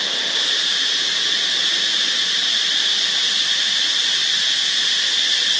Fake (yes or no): no